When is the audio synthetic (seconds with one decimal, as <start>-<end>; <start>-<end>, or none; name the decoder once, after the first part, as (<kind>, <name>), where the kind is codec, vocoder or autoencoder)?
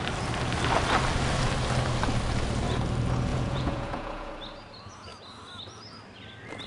3.3-4.3 (vocoder, Vocos)